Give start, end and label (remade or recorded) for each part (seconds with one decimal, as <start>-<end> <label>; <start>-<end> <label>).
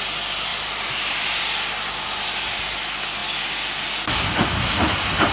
0.0-0.5 recorded; 0.5-1.4 remade; 1.4-5.3 recorded